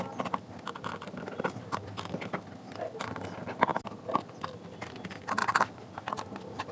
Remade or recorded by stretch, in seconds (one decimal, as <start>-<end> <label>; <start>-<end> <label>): 0.0-6.7 recorded